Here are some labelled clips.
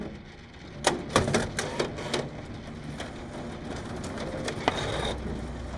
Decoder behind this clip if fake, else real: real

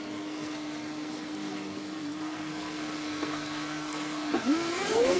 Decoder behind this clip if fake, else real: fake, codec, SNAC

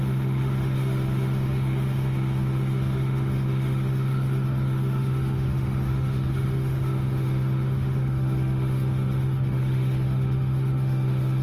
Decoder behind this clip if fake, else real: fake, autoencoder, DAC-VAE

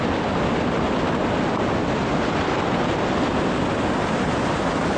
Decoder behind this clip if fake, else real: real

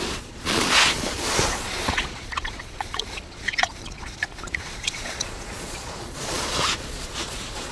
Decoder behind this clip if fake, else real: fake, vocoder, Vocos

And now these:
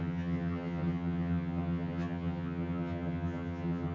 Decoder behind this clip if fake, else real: fake, vocoder, HiFi-GAN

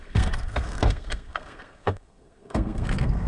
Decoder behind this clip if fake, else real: fake, codec, SNAC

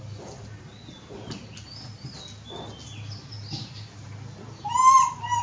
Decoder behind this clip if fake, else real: real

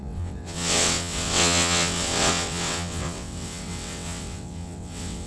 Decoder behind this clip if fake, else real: fake, vocoder, WaveNeXt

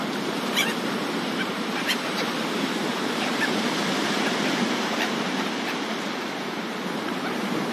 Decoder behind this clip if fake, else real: fake, vocoder, BigVGAN v2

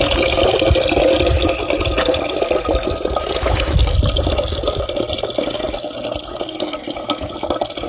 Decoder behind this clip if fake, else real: real